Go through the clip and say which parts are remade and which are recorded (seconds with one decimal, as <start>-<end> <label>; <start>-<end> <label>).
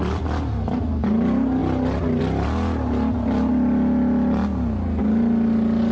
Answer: 0.0-5.9 recorded